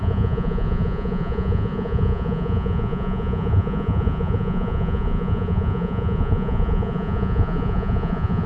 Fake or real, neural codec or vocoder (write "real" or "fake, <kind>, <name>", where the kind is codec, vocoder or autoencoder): fake, vocoder, Vocos